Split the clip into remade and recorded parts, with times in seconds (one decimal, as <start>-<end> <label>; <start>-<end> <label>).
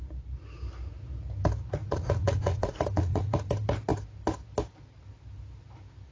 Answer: 0.0-1.8 recorded; 1.8-3.5 remade; 3.5-6.1 recorded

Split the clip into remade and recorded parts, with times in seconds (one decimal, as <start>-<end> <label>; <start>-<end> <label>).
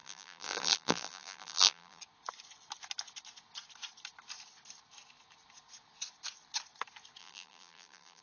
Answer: 0.0-2.0 remade; 2.0-7.2 recorded; 7.2-8.2 remade